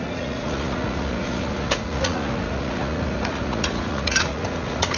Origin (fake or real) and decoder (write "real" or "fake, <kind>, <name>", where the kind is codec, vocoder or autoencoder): fake, vocoder, Vocos